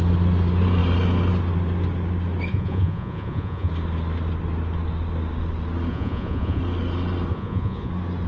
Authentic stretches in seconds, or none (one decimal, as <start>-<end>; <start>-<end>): 0.0-2.5; 3.7-5.9; 6.6-7.3; 7.9-8.3